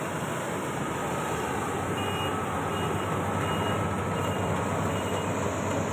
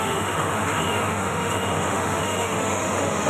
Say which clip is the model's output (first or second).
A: second